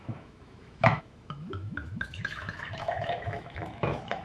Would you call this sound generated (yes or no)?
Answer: yes